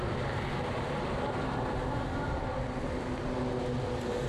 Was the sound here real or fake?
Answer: real